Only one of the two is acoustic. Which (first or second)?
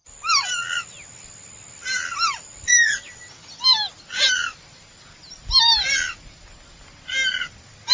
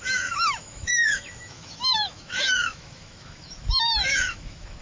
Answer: first